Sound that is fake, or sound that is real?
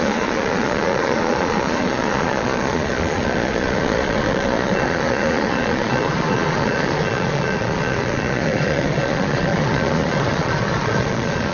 fake